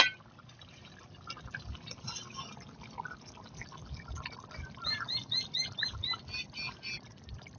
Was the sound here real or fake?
real